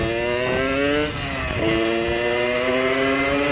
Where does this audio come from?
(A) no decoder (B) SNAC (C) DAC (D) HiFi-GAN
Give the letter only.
A